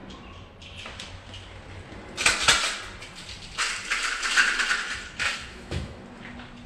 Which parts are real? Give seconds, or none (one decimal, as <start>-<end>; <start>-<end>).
0.0-5.5; 6.0-6.7